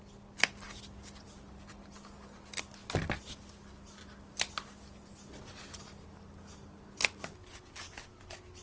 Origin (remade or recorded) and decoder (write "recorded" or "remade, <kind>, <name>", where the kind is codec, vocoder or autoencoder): recorded